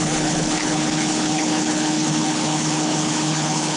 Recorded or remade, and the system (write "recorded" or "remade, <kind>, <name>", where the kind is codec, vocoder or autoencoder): remade, codec, HILCodec